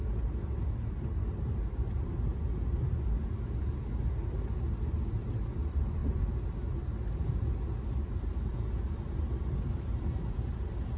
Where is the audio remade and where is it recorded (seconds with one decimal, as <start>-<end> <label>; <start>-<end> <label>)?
0.0-11.0 recorded